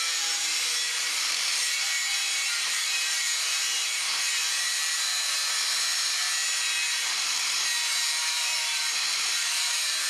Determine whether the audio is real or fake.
fake